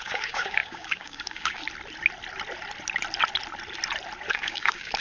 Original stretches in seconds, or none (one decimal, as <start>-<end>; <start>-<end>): 1.6-4.3